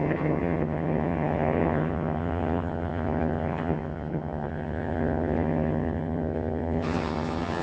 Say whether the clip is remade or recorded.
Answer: remade